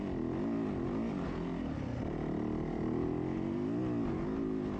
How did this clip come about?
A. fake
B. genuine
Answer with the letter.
B